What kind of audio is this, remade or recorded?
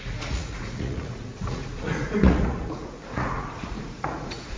remade